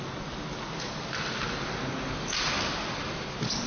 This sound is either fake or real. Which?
real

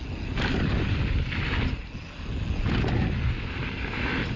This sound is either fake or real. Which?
real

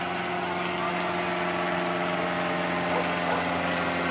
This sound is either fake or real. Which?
real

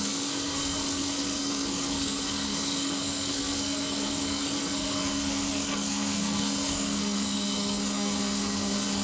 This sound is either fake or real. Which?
fake